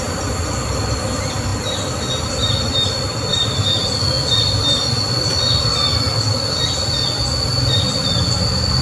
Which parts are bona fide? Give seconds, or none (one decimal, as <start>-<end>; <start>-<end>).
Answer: 0.0-1.5; 2.3-3.3; 3.8-8.8